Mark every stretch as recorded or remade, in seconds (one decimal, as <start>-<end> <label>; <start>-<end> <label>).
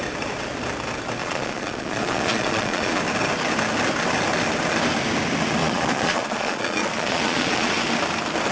0.0-1.2 recorded; 1.2-3.0 remade; 3.0-5.6 recorded; 5.6-7.7 remade; 7.7-8.5 recorded